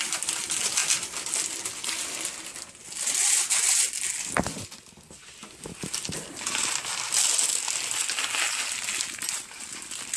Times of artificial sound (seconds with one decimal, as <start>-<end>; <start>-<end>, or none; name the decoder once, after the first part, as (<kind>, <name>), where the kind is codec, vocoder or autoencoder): none